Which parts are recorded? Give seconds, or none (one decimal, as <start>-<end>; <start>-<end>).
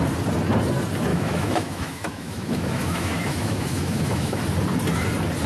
0.0-1.1; 4.4-5.5